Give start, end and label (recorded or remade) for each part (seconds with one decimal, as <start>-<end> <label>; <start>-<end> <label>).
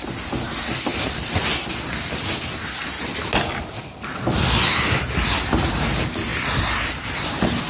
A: 0.0-7.7 recorded